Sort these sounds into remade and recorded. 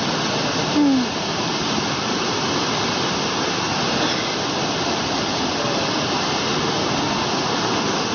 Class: recorded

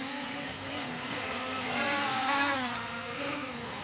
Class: remade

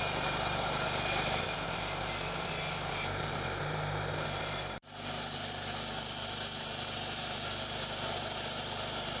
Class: remade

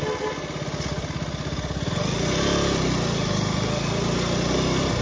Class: recorded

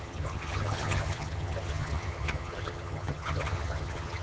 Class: remade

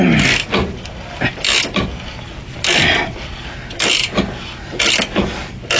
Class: recorded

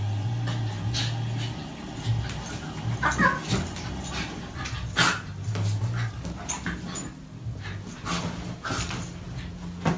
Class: recorded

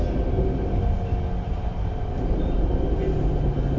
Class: recorded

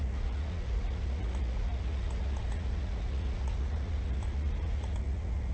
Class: remade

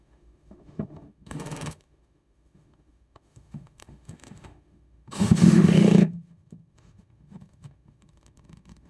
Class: remade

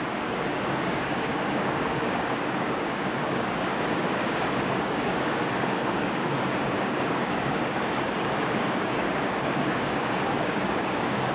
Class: remade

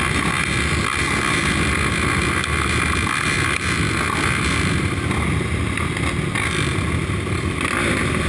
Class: recorded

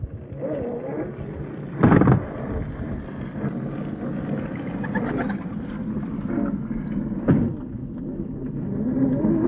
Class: recorded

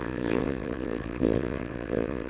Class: remade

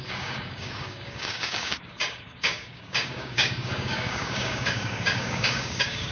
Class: remade